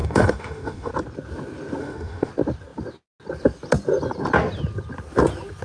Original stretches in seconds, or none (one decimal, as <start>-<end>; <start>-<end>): 0.9-1.8; 2.3-5.6